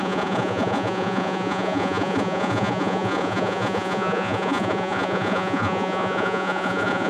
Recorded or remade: remade